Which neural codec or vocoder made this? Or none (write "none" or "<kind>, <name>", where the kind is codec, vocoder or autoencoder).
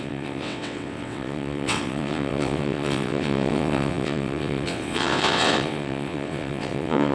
vocoder, WaveNeXt